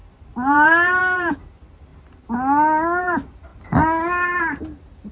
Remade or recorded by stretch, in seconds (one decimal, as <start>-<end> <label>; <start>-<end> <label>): 0.0-1.9 remade; 1.9-3.0 recorded; 3.0-3.5 remade; 3.5-5.1 recorded